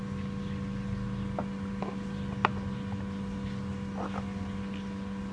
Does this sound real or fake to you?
real